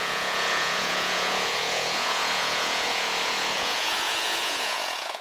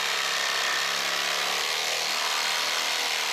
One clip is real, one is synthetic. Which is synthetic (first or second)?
first